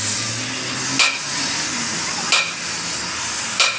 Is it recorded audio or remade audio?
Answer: recorded